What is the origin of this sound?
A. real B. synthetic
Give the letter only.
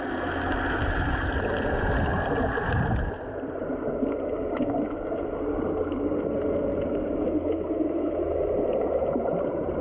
A